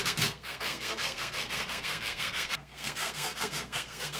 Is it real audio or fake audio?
fake